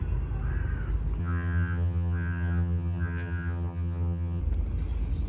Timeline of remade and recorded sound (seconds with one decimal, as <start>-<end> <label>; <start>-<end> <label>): 0.0-1.2 recorded; 1.2-4.4 remade; 4.4-5.3 recorded